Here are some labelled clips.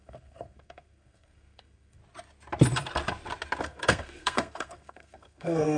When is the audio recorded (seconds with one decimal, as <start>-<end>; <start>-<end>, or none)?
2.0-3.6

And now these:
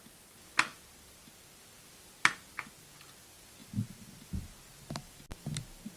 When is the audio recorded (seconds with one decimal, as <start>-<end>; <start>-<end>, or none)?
0.0-6.0

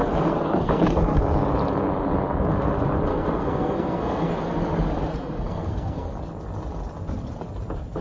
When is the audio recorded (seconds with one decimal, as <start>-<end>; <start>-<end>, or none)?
1.2-3.1; 4.3-5.1; 6.1-8.0

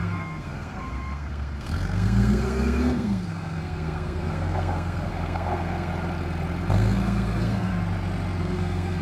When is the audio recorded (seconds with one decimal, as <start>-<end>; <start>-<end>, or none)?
5.9-6.7; 7.7-8.4

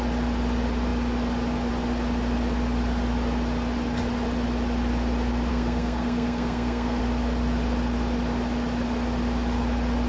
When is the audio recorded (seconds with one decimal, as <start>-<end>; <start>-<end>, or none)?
0.0-5.5; 7.0-10.1

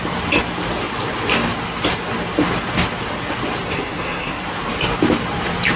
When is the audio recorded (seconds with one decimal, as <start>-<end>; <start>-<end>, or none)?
0.0-3.7; 4.4-5.8

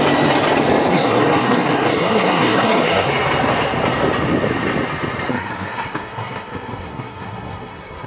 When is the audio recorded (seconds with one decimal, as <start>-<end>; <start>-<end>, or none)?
0.0-0.9; 3.1-5.3